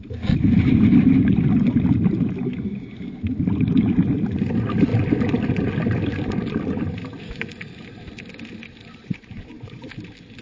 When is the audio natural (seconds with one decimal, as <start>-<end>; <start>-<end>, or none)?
0.0-9.0; 9.9-10.4